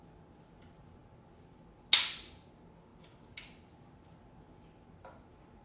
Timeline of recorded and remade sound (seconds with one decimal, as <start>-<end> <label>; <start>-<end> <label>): 0.0-5.6 recorded